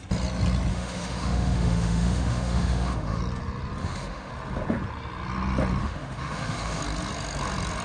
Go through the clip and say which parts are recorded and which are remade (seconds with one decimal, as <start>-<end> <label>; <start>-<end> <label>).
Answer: 0.0-0.7 recorded; 0.7-3.2 remade; 3.2-3.8 recorded; 3.8-4.3 remade; 4.3-5.8 recorded; 5.8-6.8 remade; 6.8-7.8 recorded